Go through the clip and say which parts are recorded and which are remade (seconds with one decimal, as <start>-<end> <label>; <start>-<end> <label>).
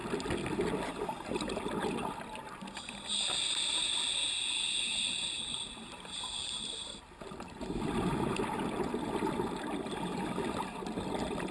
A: 0.0-11.5 recorded